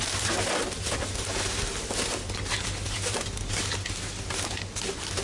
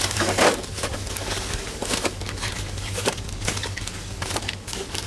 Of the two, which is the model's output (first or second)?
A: second